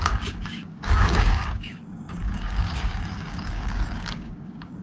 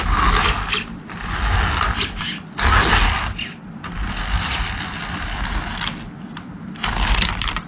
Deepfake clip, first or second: first